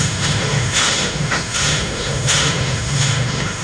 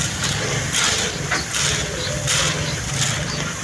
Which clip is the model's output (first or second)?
first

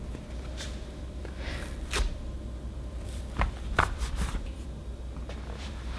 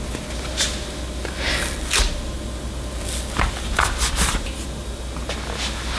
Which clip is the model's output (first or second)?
first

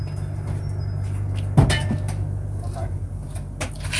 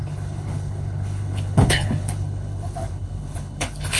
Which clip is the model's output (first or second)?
second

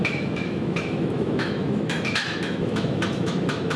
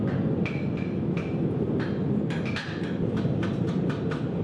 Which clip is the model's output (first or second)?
first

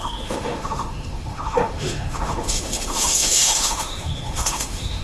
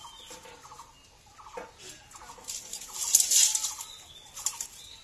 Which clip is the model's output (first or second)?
first